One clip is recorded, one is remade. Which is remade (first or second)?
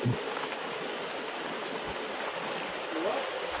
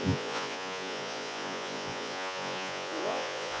second